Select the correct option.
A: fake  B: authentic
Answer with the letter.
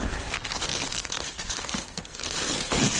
A